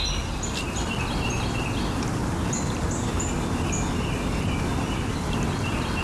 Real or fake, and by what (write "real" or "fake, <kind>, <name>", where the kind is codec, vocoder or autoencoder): real